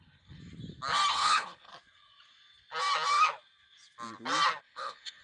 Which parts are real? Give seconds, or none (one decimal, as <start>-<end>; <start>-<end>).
0.4-1.1; 1.7-4.6